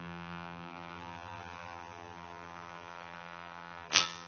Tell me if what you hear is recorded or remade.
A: remade